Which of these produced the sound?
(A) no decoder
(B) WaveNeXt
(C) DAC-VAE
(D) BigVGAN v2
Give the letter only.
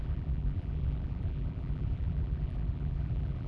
D